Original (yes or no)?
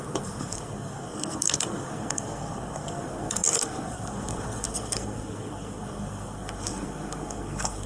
no